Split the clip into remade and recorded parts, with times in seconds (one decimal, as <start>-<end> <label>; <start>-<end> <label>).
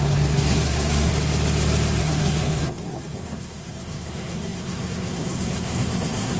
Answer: 0.0-1.1 remade; 1.1-2.0 recorded; 2.0-6.4 remade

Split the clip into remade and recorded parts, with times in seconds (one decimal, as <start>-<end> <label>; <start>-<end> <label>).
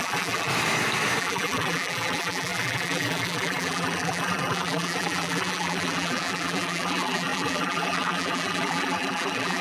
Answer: 0.0-0.5 remade; 0.5-1.2 recorded; 1.2-9.6 remade